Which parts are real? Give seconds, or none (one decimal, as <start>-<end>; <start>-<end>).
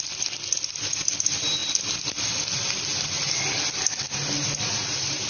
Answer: 0.0-5.3